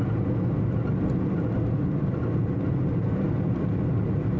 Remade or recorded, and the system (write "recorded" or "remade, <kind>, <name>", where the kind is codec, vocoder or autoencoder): recorded